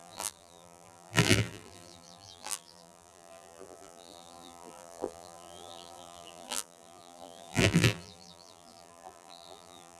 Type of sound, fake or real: fake